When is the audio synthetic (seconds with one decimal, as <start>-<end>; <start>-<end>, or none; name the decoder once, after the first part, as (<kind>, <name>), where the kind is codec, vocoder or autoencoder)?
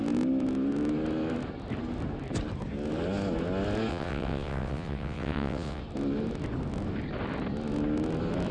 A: 3.9-5.8 (vocoder, WaveNeXt)